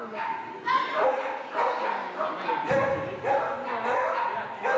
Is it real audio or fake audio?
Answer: real